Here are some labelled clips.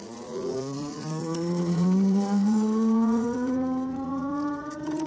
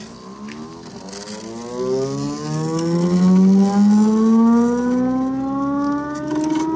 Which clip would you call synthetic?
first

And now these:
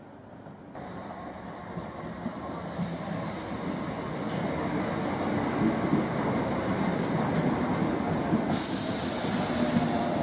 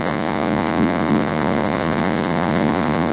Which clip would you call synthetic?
second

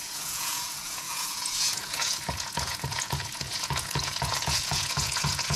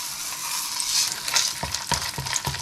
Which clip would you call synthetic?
first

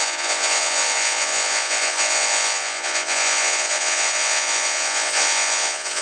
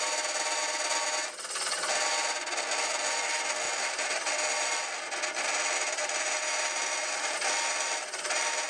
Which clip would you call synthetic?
first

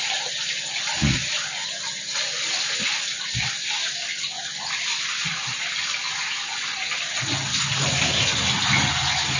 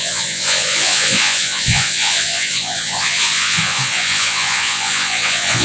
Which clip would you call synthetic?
second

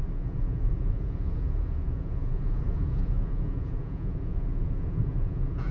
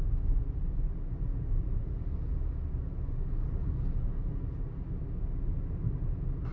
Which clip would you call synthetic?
first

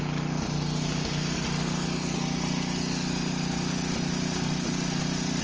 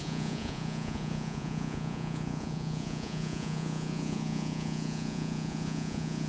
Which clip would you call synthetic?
second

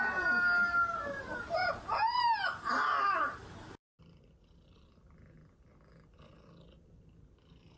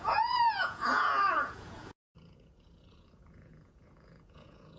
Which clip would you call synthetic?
second